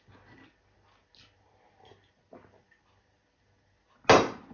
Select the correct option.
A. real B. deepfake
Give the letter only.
A